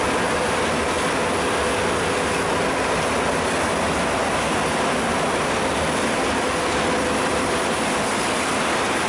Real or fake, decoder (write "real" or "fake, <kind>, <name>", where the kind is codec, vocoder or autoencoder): real